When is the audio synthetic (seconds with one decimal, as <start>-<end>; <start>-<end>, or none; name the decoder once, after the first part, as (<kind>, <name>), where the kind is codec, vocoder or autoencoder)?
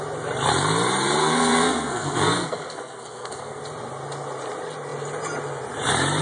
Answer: 1.2-3.6 (codec, SNAC)